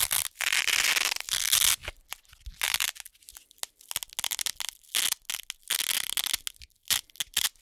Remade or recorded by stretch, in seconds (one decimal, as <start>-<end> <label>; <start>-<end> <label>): 0.0-7.6 recorded